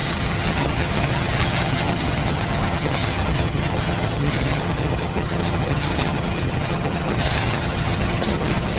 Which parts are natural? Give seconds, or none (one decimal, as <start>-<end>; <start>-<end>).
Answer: none